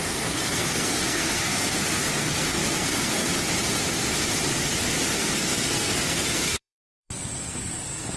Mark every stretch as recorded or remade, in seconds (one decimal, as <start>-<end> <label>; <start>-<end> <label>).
0.0-3.3 remade; 3.3-5.1 recorded; 5.1-8.2 remade